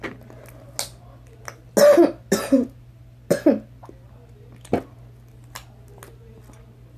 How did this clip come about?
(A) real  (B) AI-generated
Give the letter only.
A